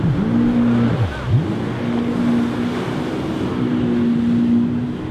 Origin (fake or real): real